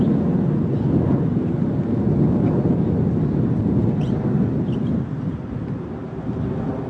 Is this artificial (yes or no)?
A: no